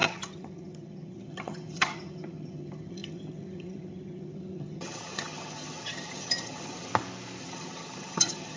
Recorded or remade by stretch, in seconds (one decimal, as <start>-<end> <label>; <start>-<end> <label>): 0.0-6.9 remade; 6.9-7.4 recorded; 7.4-8.6 remade